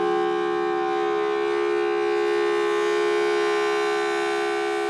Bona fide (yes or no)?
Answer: yes